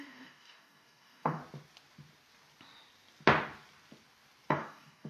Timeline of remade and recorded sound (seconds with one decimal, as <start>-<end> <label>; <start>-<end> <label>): 0.0-1.4 remade; 1.4-4.5 recorded; 4.5-5.1 remade